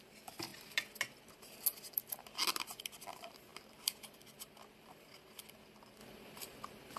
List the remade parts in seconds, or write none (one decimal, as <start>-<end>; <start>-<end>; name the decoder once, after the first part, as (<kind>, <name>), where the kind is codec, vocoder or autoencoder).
none